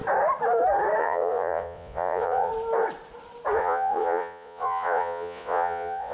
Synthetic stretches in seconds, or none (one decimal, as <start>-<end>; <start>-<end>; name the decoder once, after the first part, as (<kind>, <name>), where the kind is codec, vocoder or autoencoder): 1.0-2.5 (vocoder, Vocos); 3.6-6.1